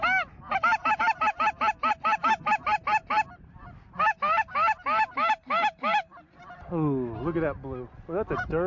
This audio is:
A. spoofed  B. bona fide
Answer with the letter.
B